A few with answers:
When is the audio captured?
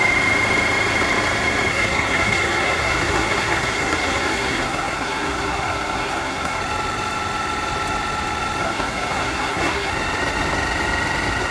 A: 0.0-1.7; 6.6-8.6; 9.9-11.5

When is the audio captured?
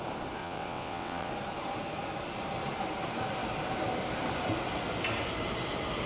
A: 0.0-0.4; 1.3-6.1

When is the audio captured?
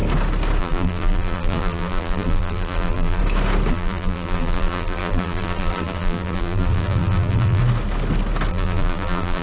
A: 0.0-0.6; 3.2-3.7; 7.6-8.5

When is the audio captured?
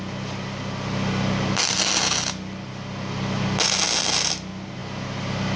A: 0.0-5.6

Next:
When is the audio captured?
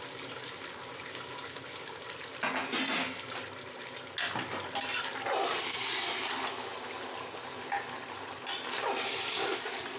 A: 0.0-10.0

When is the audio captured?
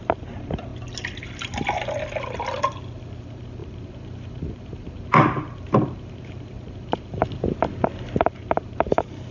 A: 0.7-3.2; 7.2-8.2